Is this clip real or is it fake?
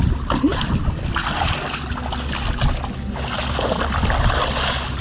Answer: real